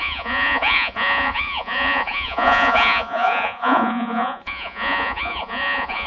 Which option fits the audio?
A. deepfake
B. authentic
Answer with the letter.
A